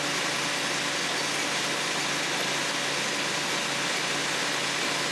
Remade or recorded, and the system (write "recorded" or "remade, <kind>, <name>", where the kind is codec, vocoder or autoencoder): recorded